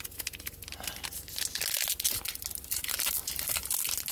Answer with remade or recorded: recorded